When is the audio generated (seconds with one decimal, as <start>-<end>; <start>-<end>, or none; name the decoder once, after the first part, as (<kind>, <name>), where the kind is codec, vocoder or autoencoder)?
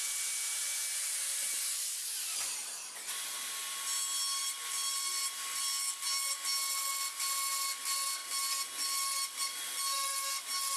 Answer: none